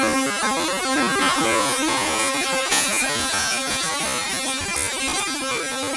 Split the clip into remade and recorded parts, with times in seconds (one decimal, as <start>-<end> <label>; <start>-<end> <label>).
0.0-1.2 recorded; 1.2-3.9 remade; 3.9-6.0 recorded